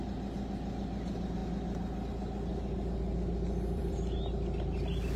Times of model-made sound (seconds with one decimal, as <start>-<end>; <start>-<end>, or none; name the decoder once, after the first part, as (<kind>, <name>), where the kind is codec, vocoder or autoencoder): 2.5-4.2 (vocoder, BigVGAN v2)